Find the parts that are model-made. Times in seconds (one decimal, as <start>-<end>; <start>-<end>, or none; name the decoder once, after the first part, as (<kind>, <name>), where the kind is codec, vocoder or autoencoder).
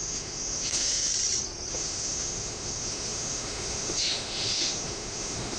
0.0-1.1 (autoencoder, DAC-VAE); 1.7-5.6